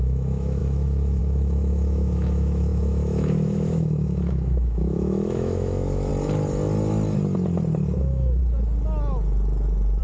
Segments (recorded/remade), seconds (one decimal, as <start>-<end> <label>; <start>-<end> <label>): 0.0-6.1 remade; 6.1-8.0 recorded; 8.0-8.4 remade; 8.4-10.0 recorded